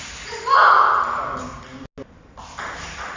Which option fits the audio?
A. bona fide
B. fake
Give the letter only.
A